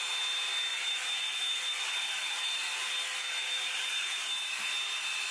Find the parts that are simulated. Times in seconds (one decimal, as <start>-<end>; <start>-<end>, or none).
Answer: none